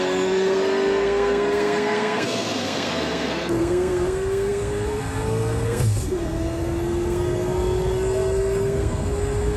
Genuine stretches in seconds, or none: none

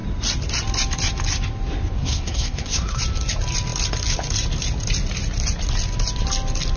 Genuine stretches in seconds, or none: 0.0-2.0; 3.0-6.8

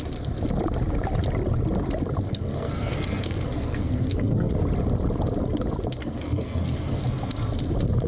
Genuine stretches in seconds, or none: 0.0-2.3; 4.5-6.0; 7.0-8.1